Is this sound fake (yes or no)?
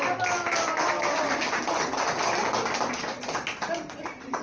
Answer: no